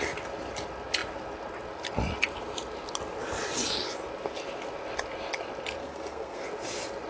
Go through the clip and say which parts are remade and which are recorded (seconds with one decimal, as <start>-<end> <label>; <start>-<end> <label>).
0.0-5.8 recorded; 5.8-6.4 remade; 6.4-7.1 recorded